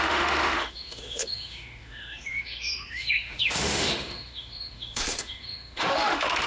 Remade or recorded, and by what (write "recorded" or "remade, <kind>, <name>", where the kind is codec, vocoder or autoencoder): remade, autoencoder, DAC-VAE